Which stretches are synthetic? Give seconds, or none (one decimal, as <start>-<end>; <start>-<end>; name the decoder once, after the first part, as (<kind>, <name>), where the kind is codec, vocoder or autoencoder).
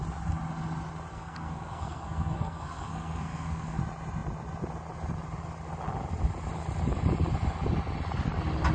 1.1-3.8 (codec, SNAC)